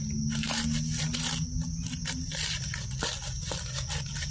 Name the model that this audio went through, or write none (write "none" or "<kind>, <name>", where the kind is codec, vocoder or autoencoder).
none